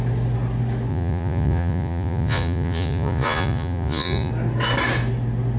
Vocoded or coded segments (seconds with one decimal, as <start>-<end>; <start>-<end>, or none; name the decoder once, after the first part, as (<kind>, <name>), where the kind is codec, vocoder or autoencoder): 0.9-4.3 (vocoder, Vocos)